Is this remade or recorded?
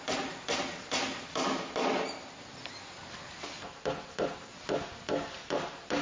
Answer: recorded